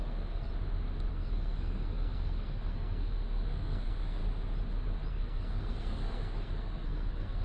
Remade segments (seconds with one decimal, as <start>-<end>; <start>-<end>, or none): 0.0-0.5; 1.1-4.2; 5.1-7.4